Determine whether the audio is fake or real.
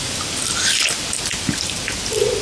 fake